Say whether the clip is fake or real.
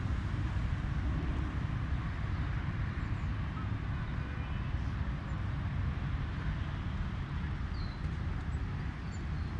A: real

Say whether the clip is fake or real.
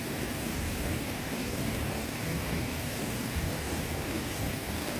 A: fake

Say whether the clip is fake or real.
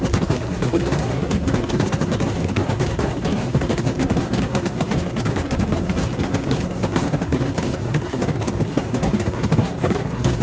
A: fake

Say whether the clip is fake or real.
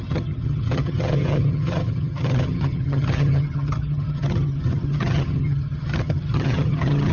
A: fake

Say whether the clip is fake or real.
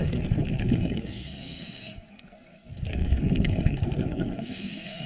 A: fake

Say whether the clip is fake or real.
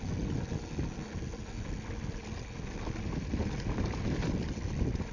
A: real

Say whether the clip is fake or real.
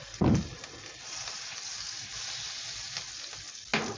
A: real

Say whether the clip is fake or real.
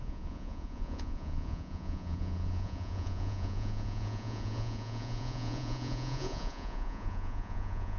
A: fake